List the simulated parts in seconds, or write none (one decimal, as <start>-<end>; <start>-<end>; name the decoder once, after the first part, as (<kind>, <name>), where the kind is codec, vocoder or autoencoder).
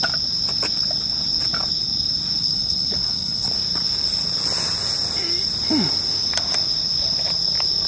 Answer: 2.4-3.5 (codec, HILCodec)